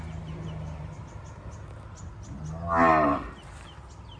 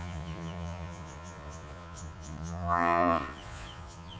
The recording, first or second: first